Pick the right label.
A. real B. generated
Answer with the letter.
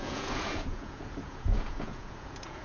B